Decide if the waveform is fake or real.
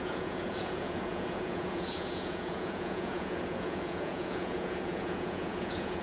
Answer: fake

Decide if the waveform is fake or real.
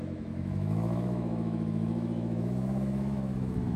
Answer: fake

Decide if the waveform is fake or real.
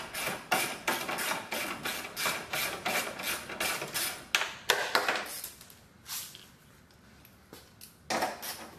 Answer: real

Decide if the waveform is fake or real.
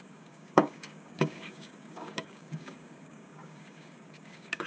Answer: fake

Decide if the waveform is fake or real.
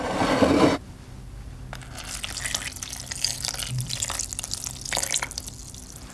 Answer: real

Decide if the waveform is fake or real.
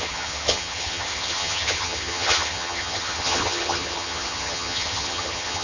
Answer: fake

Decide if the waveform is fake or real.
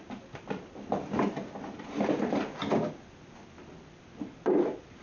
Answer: real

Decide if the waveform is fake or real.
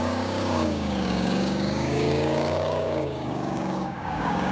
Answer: fake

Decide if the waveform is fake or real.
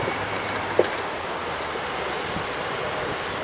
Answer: real